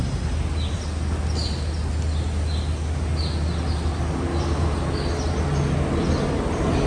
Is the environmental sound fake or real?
real